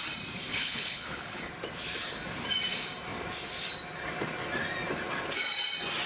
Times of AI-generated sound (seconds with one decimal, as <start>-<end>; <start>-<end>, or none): 0.5-1.5

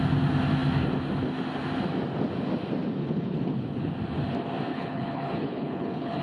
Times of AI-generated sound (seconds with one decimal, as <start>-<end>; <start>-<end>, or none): 3.0-3.9; 4.7-6.2

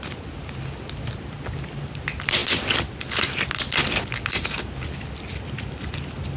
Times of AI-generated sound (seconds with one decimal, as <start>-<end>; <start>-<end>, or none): none

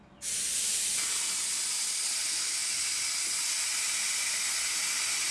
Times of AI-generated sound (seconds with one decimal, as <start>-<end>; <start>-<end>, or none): none